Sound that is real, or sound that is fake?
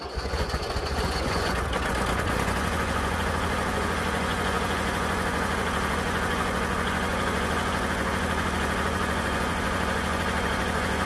fake